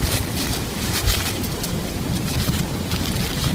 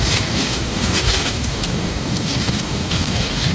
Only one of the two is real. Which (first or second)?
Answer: first